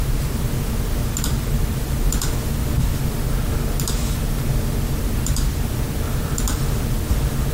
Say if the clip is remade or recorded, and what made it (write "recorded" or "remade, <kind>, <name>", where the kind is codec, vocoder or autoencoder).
recorded